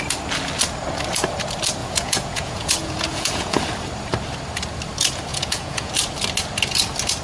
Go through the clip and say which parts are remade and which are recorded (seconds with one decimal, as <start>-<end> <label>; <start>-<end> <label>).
0.0-1.8 recorded; 1.8-3.6 remade; 3.6-5.3 recorded; 5.3-5.9 remade; 5.9-7.2 recorded